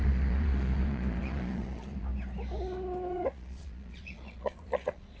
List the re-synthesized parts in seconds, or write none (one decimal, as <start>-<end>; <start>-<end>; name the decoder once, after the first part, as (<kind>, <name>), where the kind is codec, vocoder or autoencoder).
0.0-2.1 (vocoder, Vocos); 3.1-5.2